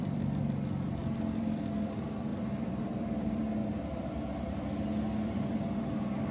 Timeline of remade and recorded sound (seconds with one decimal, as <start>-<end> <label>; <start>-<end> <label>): 0.0-3.6 remade; 3.6-6.3 recorded